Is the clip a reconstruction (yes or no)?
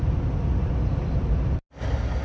no